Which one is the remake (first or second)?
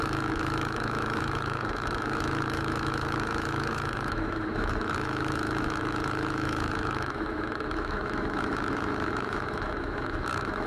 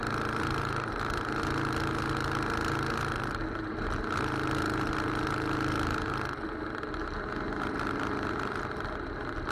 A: first